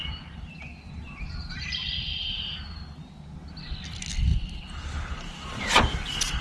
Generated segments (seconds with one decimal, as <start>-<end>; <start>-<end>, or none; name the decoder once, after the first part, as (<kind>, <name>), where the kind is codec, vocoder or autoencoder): 0.0-3.1 (vocoder, BigVGAN v2); 4.3-5.8